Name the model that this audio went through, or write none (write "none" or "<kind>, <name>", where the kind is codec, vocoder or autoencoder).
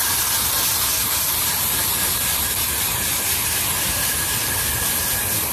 none